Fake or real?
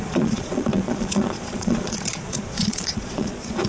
fake